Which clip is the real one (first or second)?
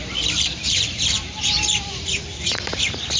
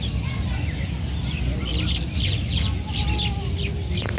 second